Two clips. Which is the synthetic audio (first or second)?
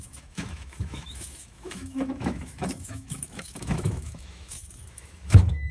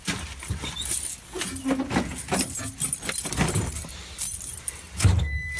first